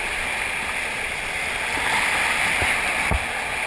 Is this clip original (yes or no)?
yes